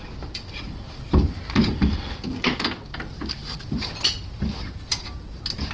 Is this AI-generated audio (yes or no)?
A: no